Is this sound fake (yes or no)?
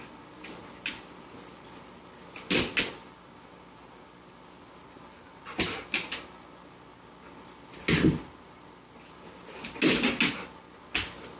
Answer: no